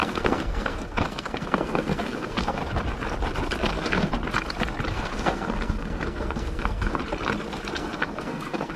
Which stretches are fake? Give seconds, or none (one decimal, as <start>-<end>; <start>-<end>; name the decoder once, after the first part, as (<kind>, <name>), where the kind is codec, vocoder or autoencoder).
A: 0.0-2.6 (codec, SNAC); 3.6-4.1; 4.9-7.0; 7.7-8.8